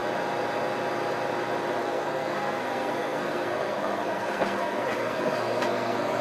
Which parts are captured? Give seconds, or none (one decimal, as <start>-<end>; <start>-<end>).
0.0-1.8